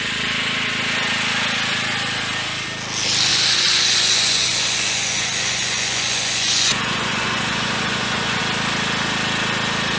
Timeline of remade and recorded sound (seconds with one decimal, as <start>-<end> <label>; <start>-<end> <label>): 0.0-3.3 recorded; 3.3-8.4 remade; 8.4-10.0 recorded